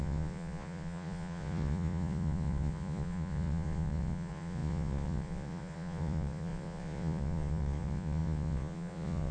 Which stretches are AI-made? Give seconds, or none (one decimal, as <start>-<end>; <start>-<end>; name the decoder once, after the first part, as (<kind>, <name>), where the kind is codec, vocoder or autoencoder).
0.0-9.3 (vocoder, Vocos)